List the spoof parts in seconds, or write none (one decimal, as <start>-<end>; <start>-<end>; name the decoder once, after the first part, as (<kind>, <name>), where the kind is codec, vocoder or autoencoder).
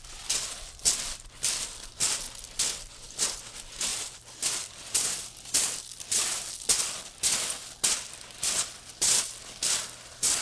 none